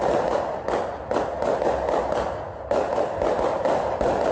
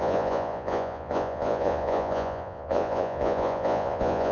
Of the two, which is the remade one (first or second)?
second